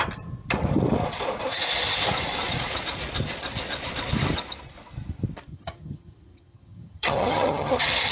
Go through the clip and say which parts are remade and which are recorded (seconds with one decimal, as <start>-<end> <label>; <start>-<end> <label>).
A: 0.0-5.5 recorded; 5.5-8.1 remade